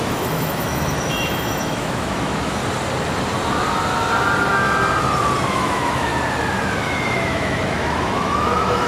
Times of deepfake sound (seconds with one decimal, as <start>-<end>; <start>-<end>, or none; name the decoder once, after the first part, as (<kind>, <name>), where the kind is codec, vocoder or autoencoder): 0.0-2.6 (autoencoder, DAC-VAE); 5.5-6.1; 6.8-8.9